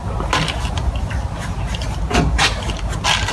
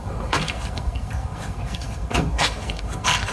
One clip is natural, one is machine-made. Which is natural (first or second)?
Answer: first